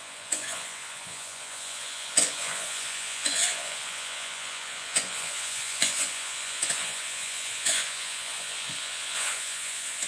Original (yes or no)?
no